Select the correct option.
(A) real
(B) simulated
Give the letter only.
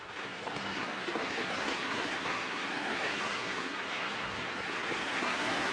B